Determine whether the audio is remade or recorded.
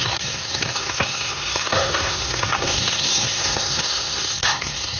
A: remade